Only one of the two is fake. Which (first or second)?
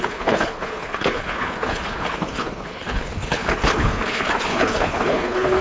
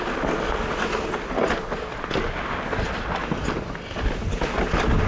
first